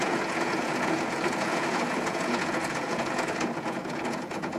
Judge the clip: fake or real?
fake